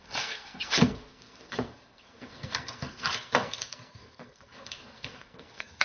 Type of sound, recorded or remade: remade